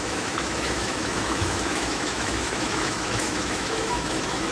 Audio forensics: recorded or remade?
remade